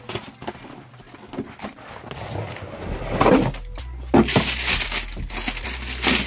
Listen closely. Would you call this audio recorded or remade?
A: recorded